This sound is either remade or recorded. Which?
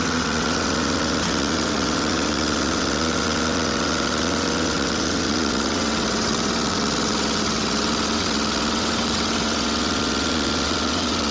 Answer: remade